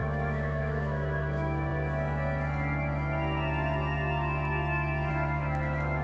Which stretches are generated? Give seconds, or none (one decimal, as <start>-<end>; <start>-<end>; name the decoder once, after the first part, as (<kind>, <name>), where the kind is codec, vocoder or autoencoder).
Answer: 0.0-1.7 (autoencoder, DAC-VAE); 5.1-6.0